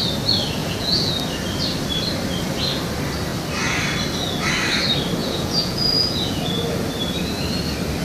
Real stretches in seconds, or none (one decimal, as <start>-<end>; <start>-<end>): 0.0-0.6; 1.1-5.2; 6.4-8.0